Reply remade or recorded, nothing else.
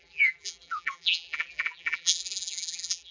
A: remade